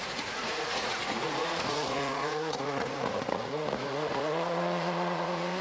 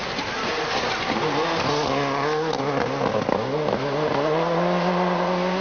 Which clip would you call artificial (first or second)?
first